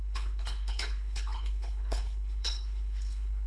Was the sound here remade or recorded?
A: remade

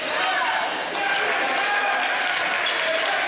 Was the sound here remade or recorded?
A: recorded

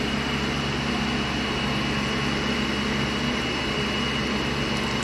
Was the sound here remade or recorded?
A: recorded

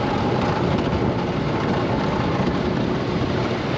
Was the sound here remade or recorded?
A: recorded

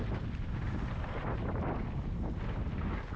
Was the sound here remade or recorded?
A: recorded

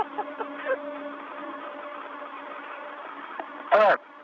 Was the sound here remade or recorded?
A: recorded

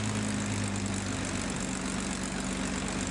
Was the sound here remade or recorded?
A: recorded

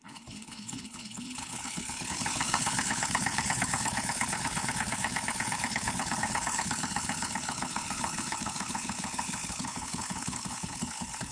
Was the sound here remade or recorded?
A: remade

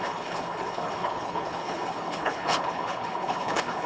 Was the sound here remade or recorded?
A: remade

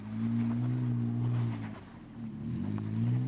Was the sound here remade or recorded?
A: recorded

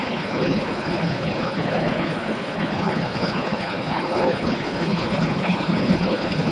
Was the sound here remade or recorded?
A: remade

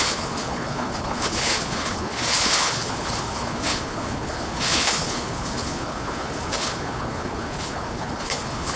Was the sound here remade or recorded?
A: remade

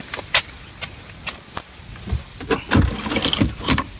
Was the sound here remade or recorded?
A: recorded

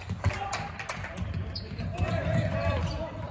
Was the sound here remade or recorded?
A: recorded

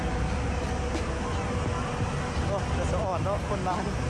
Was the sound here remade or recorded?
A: recorded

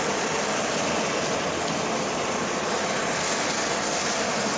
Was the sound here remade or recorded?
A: recorded